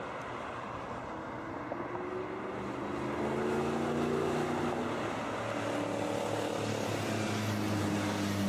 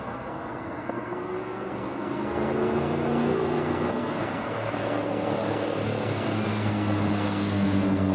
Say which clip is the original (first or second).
first